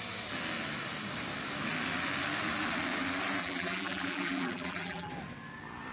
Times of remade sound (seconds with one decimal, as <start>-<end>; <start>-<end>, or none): 3.4-5.1